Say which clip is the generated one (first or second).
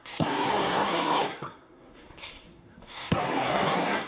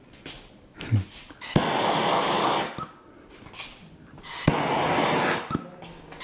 first